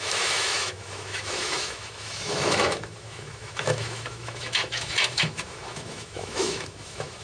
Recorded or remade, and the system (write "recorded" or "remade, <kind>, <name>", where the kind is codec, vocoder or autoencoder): remade, autoencoder, DAC-VAE